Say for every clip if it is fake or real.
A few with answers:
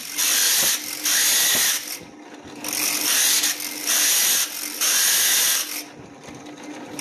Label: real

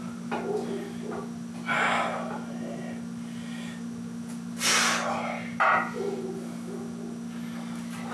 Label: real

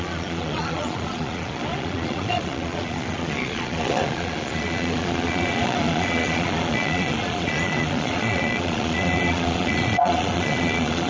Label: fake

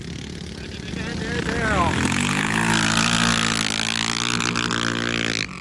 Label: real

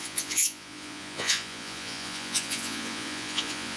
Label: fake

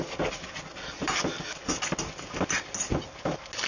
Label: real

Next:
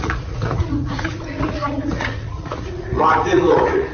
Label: fake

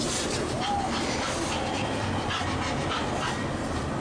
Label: real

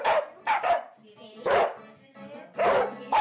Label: real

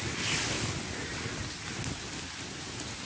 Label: real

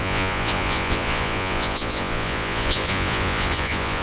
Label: fake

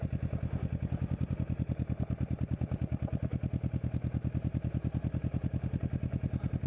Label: real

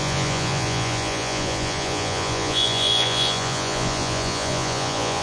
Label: fake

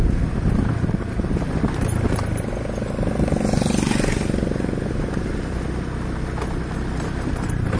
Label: real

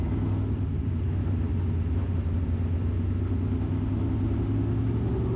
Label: real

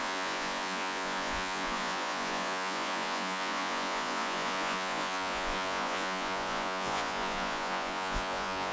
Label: fake